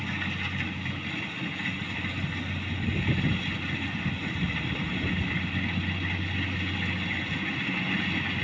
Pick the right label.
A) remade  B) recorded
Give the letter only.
B